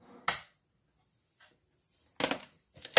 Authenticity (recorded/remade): recorded